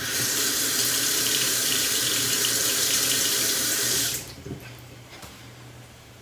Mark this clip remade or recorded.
remade